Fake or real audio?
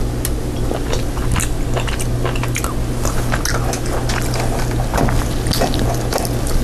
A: real